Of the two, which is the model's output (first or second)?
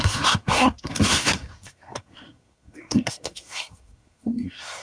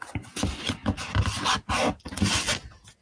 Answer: first